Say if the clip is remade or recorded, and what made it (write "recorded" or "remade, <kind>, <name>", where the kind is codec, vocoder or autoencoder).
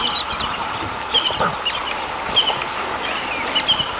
recorded